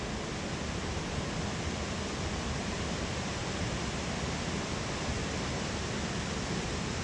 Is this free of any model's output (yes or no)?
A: yes